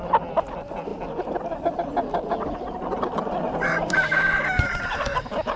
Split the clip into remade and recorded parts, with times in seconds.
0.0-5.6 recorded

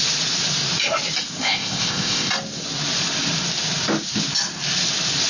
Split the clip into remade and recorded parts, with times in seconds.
0.0-1.4 recorded; 1.4-2.3 remade; 2.3-5.3 recorded

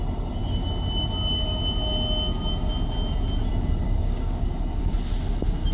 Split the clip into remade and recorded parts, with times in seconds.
0.0-3.8 recorded; 3.8-4.8 remade; 4.8-5.7 recorded

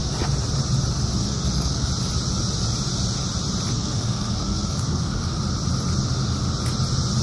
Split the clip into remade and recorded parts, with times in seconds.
0.0-1.2 recorded; 1.2-1.9 remade; 1.9-3.7 recorded; 3.7-5.3 remade; 5.3-7.2 recorded

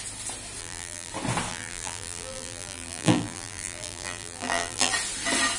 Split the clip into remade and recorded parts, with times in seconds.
0.0-0.6 recorded; 0.6-1.1 remade; 1.1-1.5 recorded; 1.5-4.9 remade; 4.9-5.6 recorded

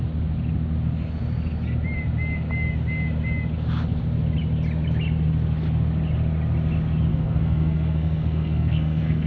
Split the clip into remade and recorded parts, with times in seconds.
0.0-7.1 recorded; 7.1-9.3 remade

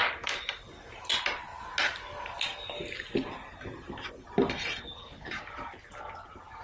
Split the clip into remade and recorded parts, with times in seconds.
0.0-6.6 recorded

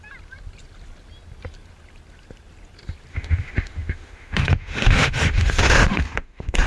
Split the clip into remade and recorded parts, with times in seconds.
0.0-3.1 recorded; 3.1-6.7 remade